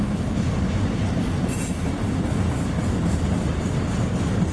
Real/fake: real